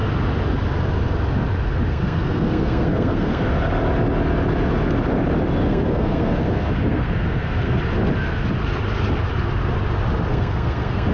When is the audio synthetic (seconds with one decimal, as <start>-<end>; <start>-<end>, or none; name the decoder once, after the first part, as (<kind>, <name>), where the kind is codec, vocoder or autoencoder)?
1.9-3.5 (codec, SNAC); 5.6-7.8; 10.3-11.1